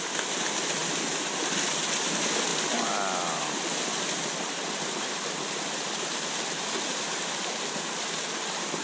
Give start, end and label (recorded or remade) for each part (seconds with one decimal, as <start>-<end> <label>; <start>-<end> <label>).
0.0-8.8 recorded